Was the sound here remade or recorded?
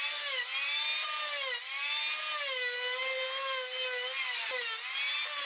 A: recorded